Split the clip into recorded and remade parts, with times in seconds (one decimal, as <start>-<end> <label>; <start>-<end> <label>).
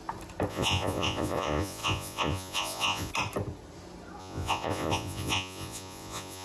0.0-0.5 recorded; 0.5-3.1 remade; 3.1-4.2 recorded; 4.2-6.4 remade